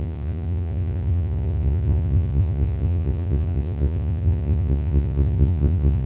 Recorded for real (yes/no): no